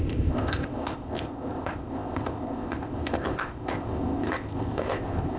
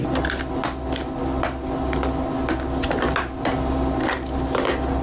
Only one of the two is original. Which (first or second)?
second